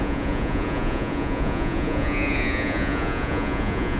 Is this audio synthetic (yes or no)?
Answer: yes